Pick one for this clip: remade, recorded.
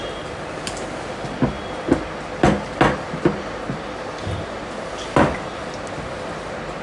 recorded